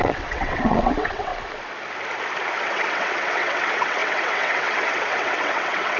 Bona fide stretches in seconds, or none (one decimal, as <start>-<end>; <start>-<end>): 1.3-2.6